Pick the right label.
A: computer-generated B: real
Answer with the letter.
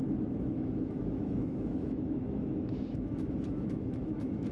A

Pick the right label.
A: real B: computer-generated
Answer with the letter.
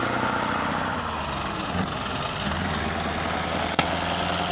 A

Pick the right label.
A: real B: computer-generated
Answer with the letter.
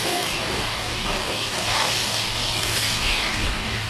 B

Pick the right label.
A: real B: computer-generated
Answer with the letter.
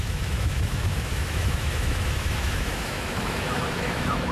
B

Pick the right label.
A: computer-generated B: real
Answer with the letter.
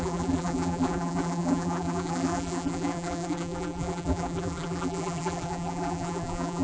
A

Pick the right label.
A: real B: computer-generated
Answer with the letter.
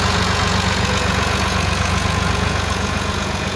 B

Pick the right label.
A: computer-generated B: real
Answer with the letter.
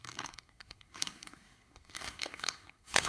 A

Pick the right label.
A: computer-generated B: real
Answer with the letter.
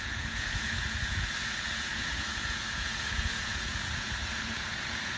A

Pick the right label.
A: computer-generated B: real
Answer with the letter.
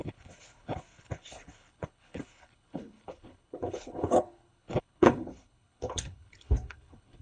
A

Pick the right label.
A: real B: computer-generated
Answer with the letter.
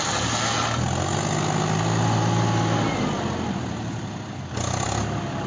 A